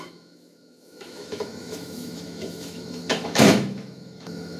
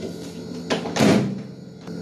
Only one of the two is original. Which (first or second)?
second